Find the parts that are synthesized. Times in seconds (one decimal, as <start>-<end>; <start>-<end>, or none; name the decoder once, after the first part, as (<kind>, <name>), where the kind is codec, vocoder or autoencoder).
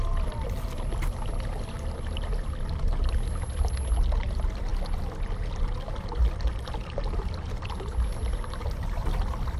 none